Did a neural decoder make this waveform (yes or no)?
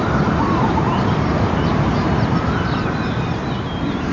yes